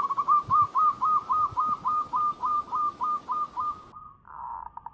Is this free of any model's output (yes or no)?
yes